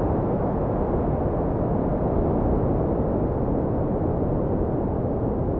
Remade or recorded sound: recorded